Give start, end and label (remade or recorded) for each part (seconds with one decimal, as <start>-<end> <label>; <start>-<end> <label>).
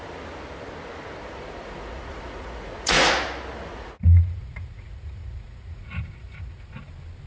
0.0-1.2 recorded; 1.2-3.1 remade; 3.1-3.7 recorded; 3.7-6.8 remade; 6.8-7.3 recorded